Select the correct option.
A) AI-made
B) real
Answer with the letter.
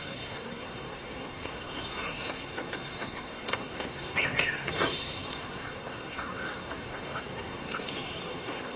A